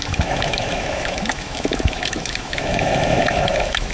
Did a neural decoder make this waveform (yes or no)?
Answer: yes